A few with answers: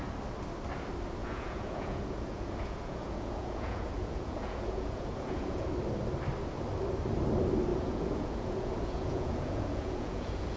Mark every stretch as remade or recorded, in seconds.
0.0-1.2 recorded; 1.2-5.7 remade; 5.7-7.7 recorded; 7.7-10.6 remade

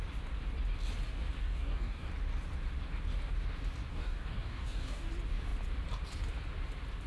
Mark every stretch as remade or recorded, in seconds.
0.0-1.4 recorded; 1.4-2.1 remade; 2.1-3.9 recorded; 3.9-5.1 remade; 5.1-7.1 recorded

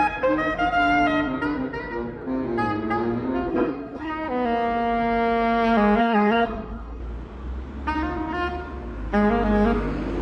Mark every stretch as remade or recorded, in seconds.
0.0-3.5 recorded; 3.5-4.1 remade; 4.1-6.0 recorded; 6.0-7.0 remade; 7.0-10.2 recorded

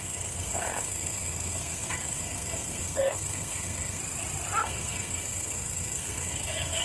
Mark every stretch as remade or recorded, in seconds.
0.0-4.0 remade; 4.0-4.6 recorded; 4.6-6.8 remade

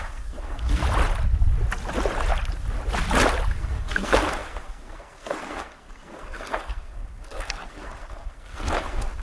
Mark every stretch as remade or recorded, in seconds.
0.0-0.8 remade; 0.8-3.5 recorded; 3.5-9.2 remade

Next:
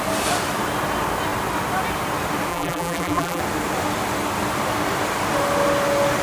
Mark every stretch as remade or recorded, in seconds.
0.0-2.5 recorded; 2.5-3.4 remade; 3.4-6.2 recorded

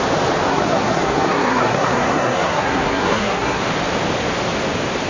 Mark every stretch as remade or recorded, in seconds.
0.0-0.5 recorded; 0.5-3.6 remade; 3.6-5.1 recorded

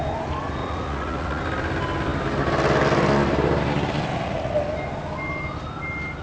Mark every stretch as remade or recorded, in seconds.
0.0-0.6 recorded; 0.6-1.4 remade; 1.4-4.1 recorded; 4.1-4.6 remade; 4.6-6.2 recorded